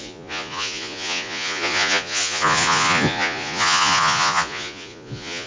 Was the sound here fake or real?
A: fake